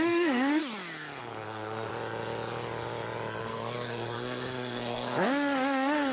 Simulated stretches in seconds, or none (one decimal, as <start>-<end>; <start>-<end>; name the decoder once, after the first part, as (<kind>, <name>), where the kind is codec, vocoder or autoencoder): 0.0-0.6 (codec, SNAC); 1.2-1.9; 3.4-6.1